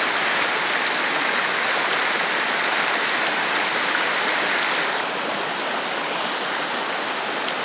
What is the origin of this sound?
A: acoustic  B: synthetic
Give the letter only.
A